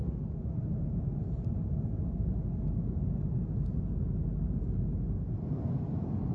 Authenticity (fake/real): real